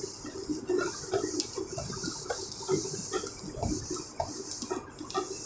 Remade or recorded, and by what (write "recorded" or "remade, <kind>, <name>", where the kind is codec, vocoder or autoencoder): recorded